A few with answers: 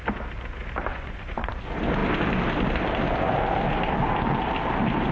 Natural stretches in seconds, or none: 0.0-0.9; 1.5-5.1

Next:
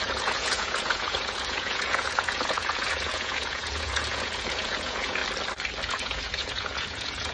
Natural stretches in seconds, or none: 5.2-5.8

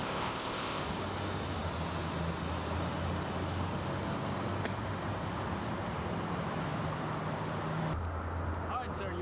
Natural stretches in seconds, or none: 0.8-9.2

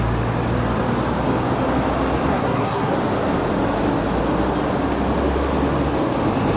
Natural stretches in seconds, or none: 0.0-2.3; 2.9-6.6

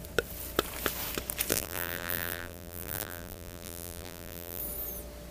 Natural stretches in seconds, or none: 0.0-1.5; 4.6-5.3